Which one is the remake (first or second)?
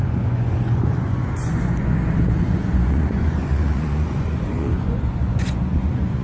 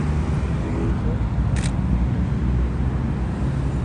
first